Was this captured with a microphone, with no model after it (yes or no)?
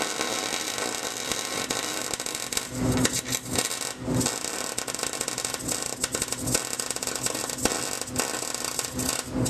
yes